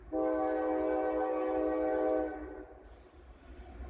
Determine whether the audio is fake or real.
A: real